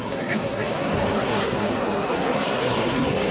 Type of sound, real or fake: fake